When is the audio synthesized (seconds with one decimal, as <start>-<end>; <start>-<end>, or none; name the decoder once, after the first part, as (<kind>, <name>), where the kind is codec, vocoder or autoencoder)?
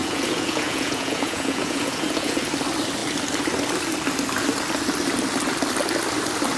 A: 0.0-2.4 (vocoder, Vocos)